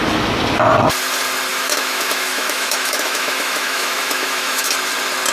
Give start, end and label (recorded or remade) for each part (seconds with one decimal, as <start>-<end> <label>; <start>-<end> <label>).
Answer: 0.0-1.5 recorded; 1.5-4.7 remade; 4.7-5.3 recorded